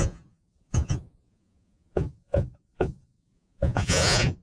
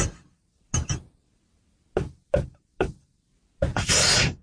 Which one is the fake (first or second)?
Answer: first